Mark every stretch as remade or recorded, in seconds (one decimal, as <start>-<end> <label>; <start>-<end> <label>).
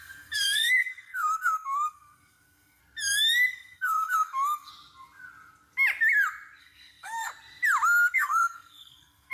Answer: 0.0-2.8 remade; 2.8-3.5 recorded; 3.5-4.7 remade; 4.7-6.6 recorded; 6.6-7.3 remade; 7.3-8.1 recorded; 8.1-9.3 remade